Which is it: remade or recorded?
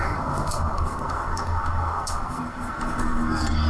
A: remade